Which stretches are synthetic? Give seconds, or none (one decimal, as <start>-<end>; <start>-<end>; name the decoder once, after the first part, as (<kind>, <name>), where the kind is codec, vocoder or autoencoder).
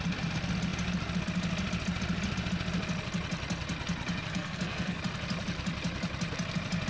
4.3-5.0 (codec, SNAC)